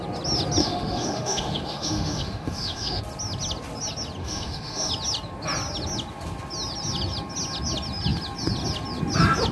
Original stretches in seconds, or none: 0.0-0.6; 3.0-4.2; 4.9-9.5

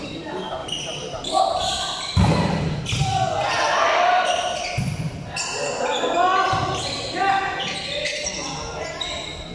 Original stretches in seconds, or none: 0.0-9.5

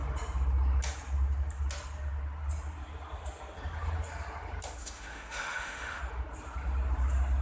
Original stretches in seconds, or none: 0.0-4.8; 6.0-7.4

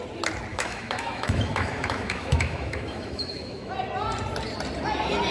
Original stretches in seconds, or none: 0.0-0.5; 3.7-5.3